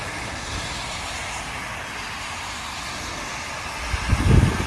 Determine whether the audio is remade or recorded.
recorded